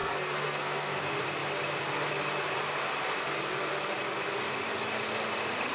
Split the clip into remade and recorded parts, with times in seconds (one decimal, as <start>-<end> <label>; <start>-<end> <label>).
0.0-1.0 remade; 1.0-5.7 recorded